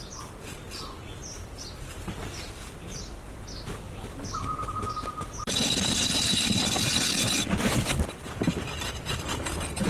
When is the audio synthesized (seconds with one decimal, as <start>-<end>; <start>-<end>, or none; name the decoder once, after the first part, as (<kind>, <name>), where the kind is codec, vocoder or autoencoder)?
none